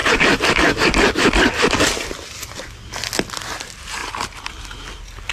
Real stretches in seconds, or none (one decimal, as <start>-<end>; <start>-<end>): 2.6-5.3